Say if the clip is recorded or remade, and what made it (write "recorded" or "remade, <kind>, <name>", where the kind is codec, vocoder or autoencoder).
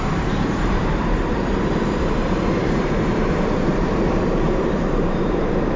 remade, vocoder, BigVGAN v2